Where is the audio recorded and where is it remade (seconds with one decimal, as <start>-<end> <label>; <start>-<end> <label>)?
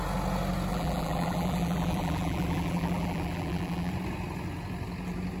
0.0-0.7 recorded; 0.7-3.9 remade; 3.9-5.4 recorded